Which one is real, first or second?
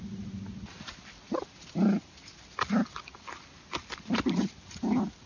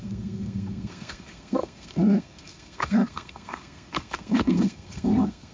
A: first